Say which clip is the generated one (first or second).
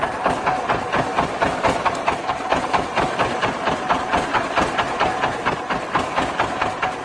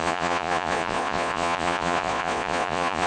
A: second